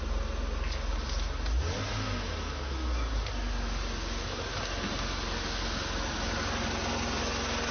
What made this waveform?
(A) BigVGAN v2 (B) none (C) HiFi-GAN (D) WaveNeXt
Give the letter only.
B